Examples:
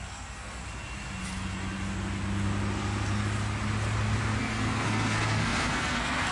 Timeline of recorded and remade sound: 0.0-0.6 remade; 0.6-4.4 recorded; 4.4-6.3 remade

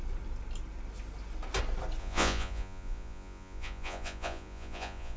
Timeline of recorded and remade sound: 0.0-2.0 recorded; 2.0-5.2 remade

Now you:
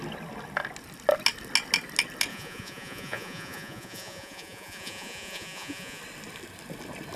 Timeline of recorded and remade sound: 0.0-2.3 recorded; 2.3-6.0 remade; 6.0-7.2 recorded

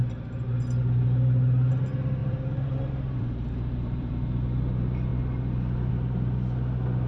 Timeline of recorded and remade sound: 0.0-2.2 recorded; 2.2-4.1 remade; 4.1-7.1 recorded